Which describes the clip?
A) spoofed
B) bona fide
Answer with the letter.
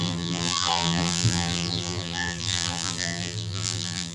A